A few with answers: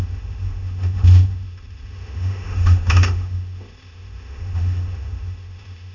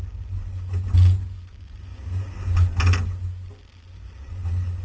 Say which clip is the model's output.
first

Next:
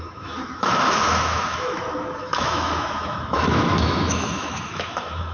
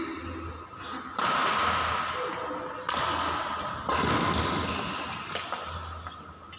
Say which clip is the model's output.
first